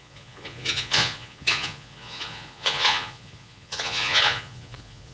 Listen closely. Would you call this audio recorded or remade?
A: remade